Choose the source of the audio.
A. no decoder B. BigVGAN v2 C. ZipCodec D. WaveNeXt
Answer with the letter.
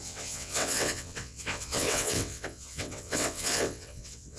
D